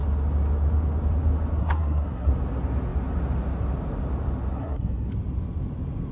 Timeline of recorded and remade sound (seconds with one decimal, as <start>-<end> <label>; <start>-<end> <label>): 0.0-1.6 recorded; 1.6-2.3 remade; 2.3-4.5 recorded; 4.5-5.1 remade; 5.1-6.1 recorded

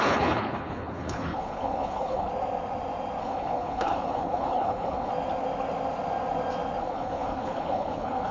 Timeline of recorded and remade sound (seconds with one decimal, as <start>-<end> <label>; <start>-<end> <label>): 0.0-2.3 remade; 2.3-3.2 recorded; 3.2-5.1 remade; 5.1-6.8 recorded; 6.8-8.3 remade